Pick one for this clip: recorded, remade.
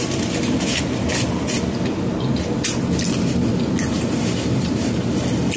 recorded